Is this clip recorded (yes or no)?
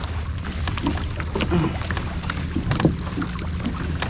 yes